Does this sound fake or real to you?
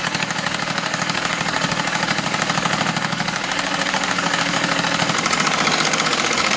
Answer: fake